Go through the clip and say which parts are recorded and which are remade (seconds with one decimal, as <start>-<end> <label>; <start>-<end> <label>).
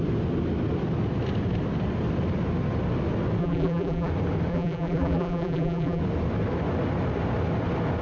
0.0-3.4 recorded; 3.4-4.1 remade; 4.1-4.5 recorded; 4.5-6.0 remade; 6.0-8.0 recorded